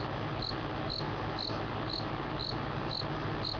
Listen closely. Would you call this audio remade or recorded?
recorded